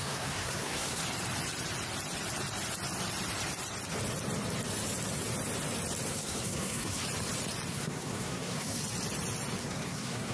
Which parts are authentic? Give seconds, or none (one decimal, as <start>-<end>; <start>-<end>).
1.0-6.1; 7.0-7.7; 8.8-9.6